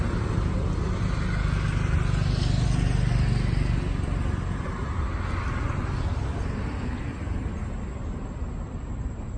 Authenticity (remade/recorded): recorded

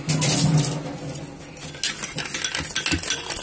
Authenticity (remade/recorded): recorded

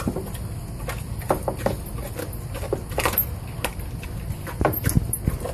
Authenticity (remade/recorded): recorded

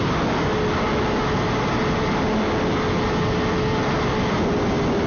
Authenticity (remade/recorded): recorded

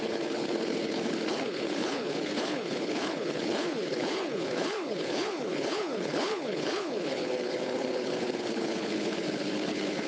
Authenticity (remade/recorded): remade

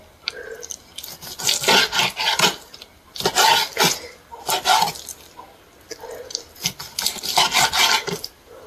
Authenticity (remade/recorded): recorded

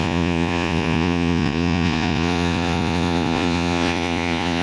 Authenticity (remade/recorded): remade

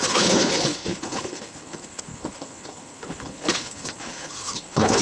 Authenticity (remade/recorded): remade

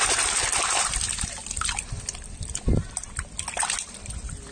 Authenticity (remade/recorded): recorded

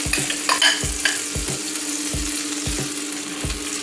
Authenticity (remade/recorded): recorded